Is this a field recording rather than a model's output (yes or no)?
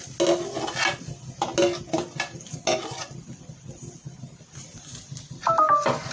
yes